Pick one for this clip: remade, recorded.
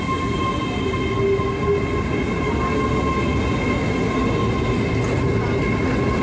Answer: recorded